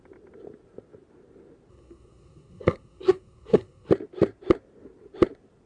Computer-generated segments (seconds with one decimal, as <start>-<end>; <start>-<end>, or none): 1.7-3.9

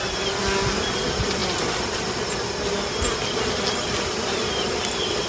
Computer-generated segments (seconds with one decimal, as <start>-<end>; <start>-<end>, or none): none

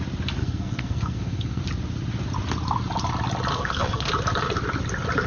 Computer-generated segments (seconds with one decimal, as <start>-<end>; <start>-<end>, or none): 0.4-1.6; 3.5-4.1

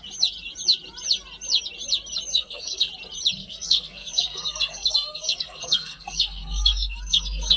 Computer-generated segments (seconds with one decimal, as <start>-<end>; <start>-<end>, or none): 2.3-2.9; 3.4-7.6